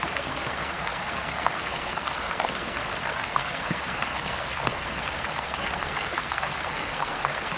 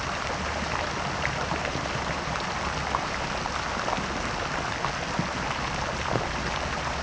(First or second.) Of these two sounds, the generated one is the first